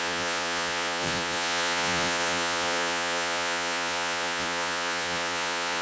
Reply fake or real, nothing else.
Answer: fake